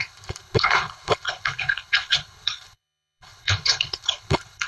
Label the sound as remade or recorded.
remade